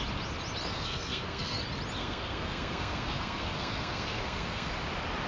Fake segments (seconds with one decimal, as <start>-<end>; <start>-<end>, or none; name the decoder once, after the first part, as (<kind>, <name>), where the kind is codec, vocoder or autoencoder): 0.7-1.6 (codec, SNAC); 2.0-4.7